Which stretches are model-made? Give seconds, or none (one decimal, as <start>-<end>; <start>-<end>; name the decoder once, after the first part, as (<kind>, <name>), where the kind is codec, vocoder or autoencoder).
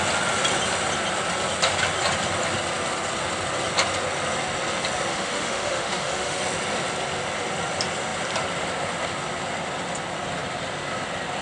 5.1-6.4 (autoencoder, DAC-VAE)